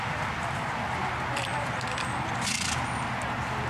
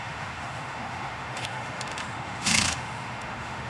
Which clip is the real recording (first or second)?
first